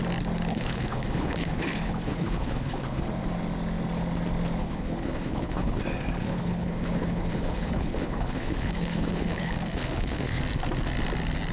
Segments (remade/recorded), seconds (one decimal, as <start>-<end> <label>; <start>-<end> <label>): 0.0-0.5 recorded; 0.5-3.0 remade; 3.0-4.6 recorded; 4.6-5.8 remade; 5.8-6.2 recorded; 6.2-10.4 remade; 10.4-11.5 recorded